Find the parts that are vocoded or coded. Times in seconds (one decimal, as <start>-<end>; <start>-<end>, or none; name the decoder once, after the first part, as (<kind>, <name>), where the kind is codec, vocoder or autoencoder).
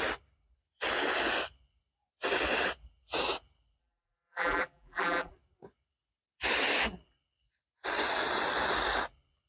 3.8-5.3 (vocoder, BigVGAN v2)